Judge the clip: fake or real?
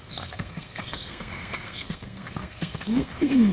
fake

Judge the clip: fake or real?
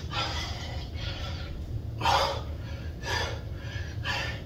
real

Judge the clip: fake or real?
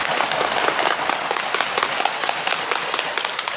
real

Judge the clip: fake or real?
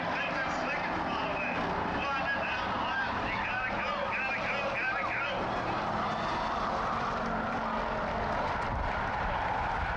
real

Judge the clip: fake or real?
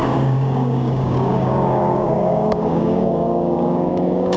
fake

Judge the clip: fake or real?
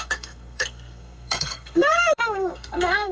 fake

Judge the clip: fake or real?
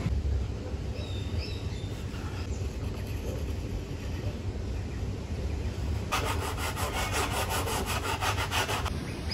real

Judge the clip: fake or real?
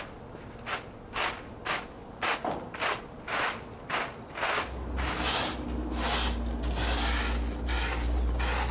real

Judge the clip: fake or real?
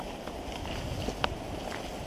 real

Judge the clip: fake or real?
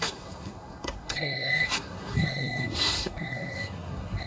fake